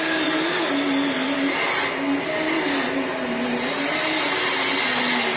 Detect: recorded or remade recorded